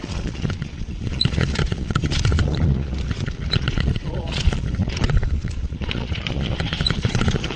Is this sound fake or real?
fake